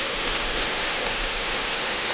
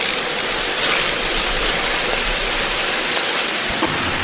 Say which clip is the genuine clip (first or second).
second